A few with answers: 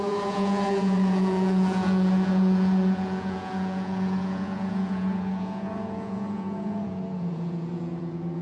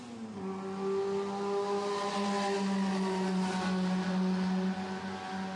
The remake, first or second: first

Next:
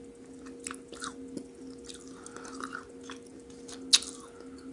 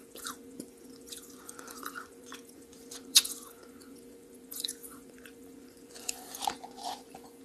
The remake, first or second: second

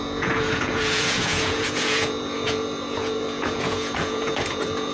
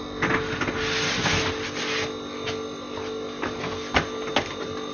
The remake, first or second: first